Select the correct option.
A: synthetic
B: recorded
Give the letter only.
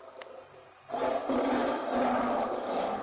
B